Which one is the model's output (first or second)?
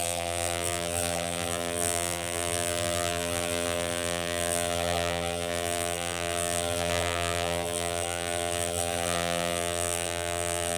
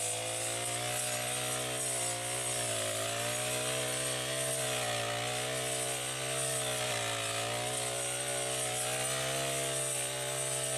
first